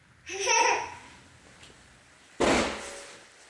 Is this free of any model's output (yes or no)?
yes